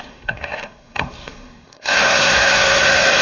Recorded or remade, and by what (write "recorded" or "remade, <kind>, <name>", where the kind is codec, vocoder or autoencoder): remade, codec, SNAC